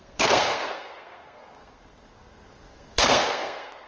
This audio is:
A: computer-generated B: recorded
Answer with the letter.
A